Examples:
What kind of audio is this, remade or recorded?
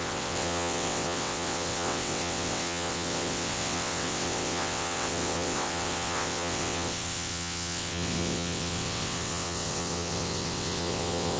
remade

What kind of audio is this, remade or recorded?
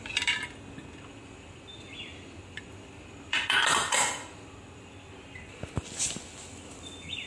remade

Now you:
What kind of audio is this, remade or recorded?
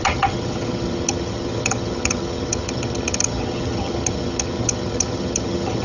remade